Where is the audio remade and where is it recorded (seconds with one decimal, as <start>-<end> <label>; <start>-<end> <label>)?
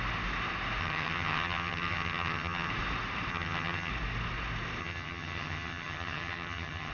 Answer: 0.0-0.8 recorded; 0.8-2.7 remade; 2.7-3.3 recorded; 3.3-3.9 remade; 3.9-4.8 recorded; 4.8-6.9 remade